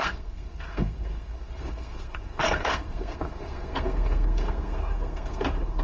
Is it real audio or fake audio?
fake